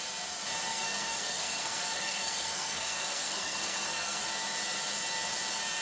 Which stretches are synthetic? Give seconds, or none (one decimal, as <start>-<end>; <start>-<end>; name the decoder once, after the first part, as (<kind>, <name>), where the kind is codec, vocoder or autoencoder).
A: 0.7-4.2 (codec, SNAC)